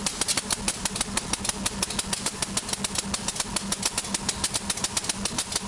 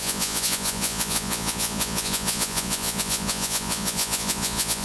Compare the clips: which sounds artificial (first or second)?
second